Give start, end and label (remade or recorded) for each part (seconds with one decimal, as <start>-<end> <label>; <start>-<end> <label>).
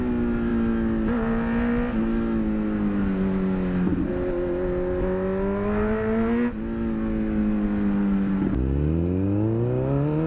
0.0-10.3 recorded